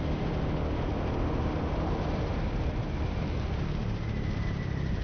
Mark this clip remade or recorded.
recorded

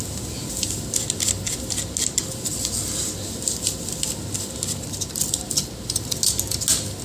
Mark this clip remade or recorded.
recorded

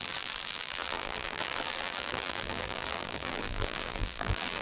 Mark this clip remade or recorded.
remade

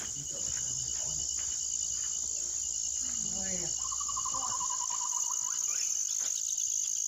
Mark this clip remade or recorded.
recorded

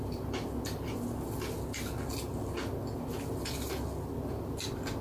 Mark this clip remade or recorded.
recorded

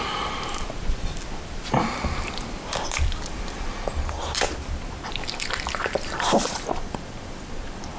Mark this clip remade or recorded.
remade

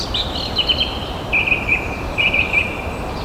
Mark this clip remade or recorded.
remade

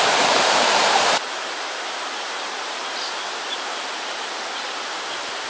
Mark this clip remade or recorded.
remade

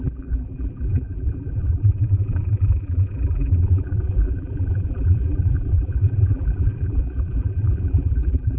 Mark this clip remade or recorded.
remade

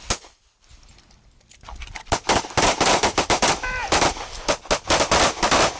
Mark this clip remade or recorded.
recorded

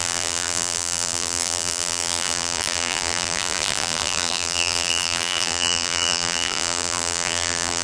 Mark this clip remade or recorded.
remade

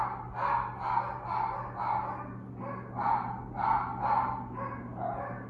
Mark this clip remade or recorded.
recorded